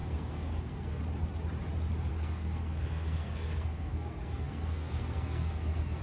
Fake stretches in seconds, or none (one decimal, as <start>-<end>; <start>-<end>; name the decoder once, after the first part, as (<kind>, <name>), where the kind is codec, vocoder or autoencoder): 0.0-1.0 (codec, SNAC); 2.1-6.0